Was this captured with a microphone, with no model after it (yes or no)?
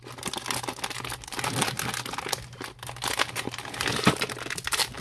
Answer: yes